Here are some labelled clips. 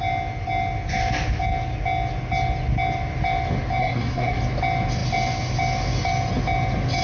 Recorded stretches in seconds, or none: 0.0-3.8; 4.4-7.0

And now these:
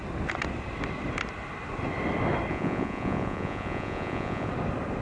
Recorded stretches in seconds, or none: 0.0-2.5; 4.5-5.0

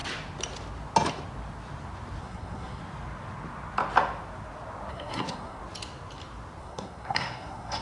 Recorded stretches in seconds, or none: 0.0-2.2; 2.8-4.9; 5.6-6.6

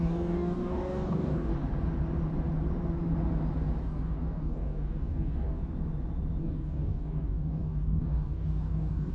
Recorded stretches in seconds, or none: 1.5-3.8; 5.6-6.4